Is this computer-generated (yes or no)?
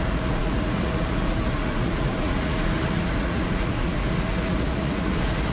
yes